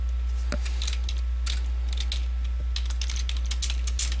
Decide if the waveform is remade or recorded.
recorded